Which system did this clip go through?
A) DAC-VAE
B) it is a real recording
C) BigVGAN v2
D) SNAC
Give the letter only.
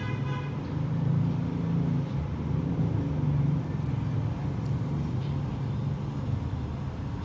B